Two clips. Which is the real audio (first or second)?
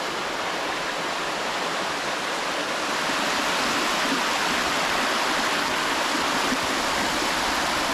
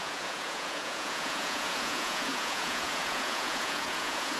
first